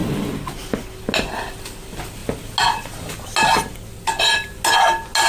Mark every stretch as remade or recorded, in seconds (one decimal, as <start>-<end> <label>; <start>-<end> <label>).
0.0-5.3 recorded